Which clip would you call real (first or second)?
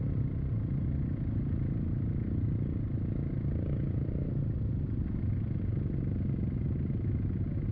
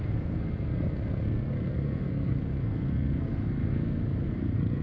first